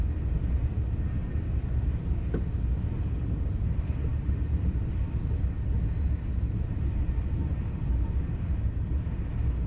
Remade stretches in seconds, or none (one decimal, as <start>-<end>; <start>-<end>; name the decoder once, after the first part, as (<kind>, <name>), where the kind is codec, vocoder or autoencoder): none